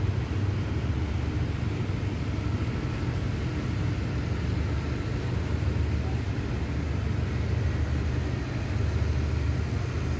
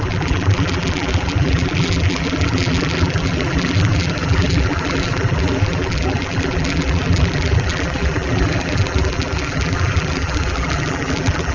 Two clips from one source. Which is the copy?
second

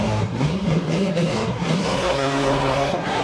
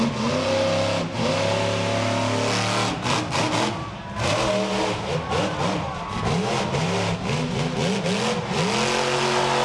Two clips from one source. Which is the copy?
first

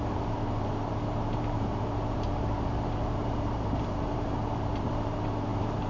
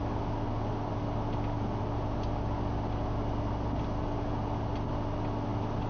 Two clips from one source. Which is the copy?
first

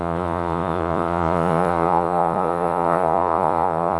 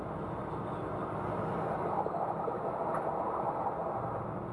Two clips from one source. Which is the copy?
first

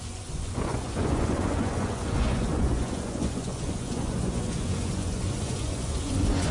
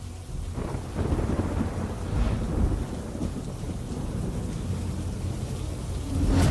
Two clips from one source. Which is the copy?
first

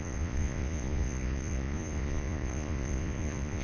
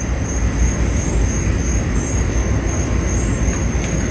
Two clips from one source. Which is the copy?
first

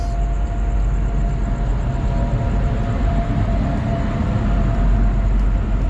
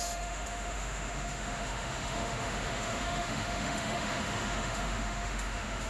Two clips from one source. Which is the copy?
second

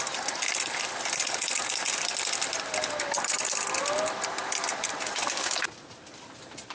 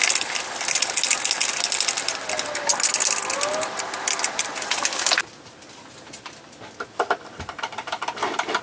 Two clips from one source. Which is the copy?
first